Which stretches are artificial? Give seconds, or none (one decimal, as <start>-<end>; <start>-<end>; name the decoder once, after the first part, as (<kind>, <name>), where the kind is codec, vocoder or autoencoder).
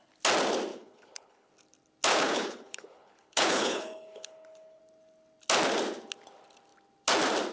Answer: 0.7-1.5 (codec, HILCodec); 2.1-4.8